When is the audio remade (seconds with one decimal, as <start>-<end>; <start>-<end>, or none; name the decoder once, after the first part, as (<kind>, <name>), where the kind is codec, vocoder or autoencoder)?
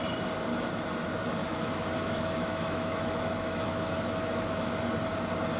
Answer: 1.4-4.8 (autoencoder, DAC-VAE)